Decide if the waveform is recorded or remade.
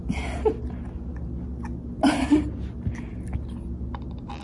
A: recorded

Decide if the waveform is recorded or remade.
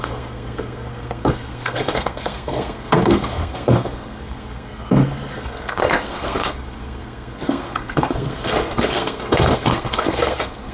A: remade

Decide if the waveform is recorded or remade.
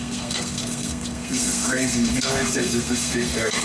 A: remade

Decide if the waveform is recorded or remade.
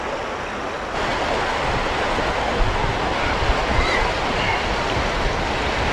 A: recorded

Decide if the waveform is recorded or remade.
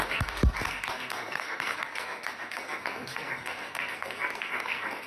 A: remade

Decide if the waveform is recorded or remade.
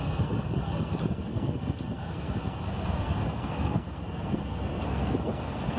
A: remade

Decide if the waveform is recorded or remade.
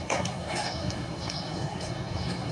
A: remade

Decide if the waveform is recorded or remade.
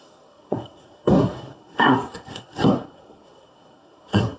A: remade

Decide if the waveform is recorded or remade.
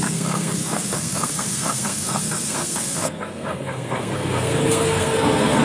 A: remade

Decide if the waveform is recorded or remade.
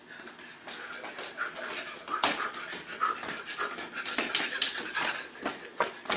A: recorded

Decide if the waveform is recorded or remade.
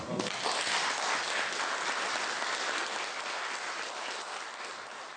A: recorded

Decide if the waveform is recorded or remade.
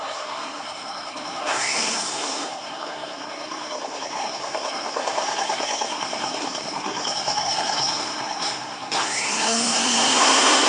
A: remade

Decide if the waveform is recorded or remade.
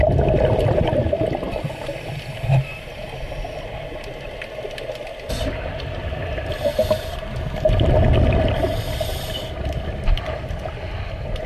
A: recorded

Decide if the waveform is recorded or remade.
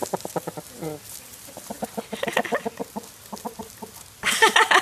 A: recorded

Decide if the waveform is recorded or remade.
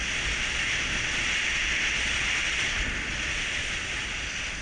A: recorded